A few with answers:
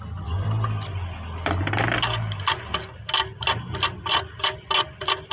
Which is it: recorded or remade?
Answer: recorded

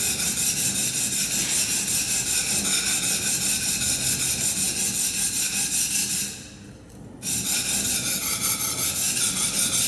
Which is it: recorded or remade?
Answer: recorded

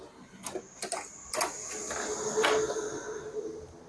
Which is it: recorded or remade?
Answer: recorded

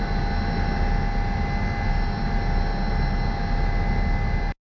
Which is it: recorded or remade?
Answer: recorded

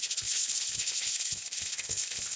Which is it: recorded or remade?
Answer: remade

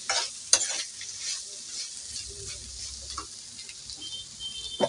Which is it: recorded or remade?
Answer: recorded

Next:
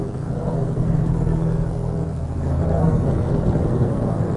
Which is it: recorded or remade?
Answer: remade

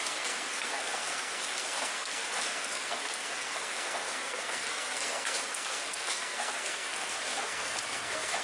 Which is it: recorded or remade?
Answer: remade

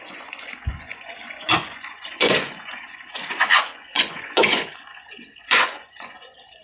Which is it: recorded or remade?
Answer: remade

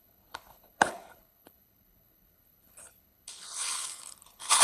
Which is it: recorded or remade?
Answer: remade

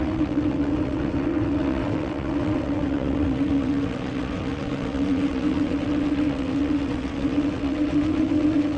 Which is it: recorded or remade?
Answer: remade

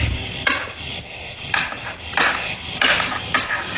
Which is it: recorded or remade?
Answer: recorded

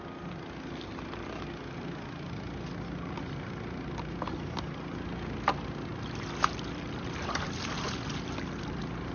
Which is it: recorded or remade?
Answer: recorded